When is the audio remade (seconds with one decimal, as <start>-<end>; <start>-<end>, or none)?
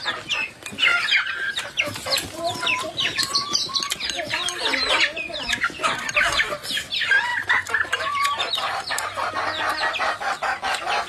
0.9-5.5; 7.3-9.3